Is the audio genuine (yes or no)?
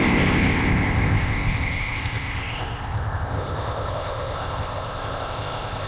no